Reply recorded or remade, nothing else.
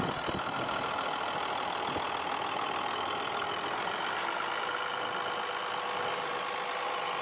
recorded